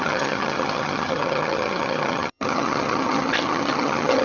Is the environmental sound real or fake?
fake